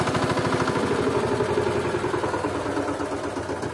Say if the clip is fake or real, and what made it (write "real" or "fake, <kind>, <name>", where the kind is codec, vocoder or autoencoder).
real